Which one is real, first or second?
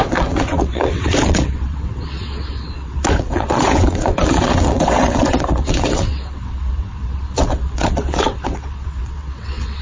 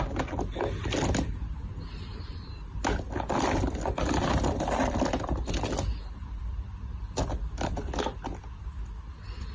second